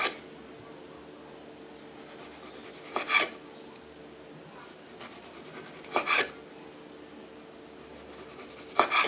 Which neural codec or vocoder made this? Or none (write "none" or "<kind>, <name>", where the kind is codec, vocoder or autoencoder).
none